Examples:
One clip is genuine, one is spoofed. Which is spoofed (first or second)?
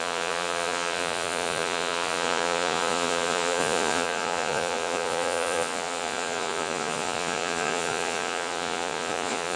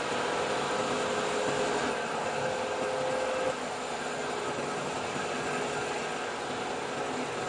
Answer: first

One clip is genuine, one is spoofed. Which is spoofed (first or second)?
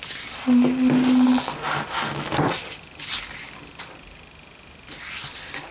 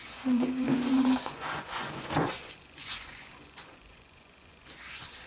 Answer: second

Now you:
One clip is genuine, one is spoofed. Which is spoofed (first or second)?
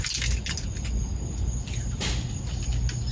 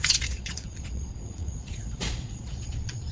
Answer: second